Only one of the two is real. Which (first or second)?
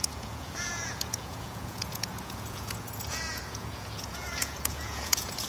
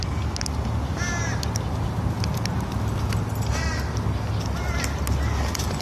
second